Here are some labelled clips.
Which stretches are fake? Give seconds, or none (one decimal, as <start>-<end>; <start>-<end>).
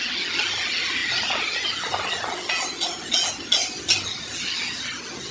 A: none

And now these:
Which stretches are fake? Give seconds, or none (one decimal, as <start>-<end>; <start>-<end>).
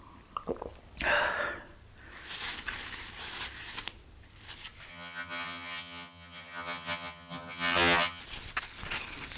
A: 4.9-8.2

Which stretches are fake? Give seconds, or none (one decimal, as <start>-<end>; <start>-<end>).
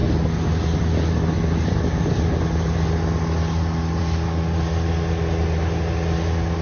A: none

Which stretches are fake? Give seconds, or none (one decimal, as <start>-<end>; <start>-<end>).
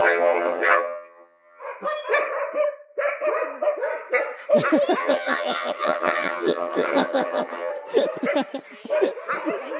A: 0.0-1.6; 5.0-7.7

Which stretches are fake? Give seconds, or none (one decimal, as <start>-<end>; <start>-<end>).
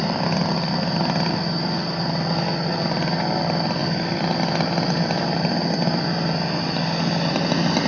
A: none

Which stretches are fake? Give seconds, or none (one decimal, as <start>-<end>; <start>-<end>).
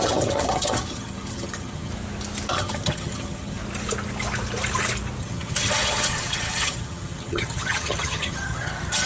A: 0.0-1.9; 2.5-3.6; 5.2-9.1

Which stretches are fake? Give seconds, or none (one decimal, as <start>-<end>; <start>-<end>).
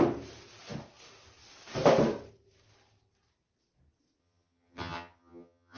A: 4.2-5.8